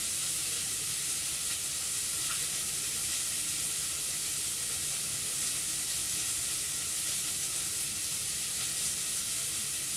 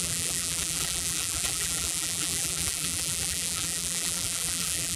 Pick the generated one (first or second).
second